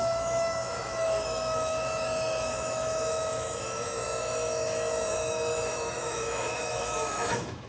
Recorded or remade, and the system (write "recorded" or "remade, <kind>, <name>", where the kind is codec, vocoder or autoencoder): remade, autoencoder, DAC-VAE